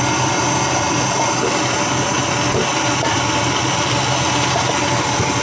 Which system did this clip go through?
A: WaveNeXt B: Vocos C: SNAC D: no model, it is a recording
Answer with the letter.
D